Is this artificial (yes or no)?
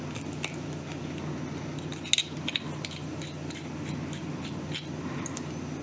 no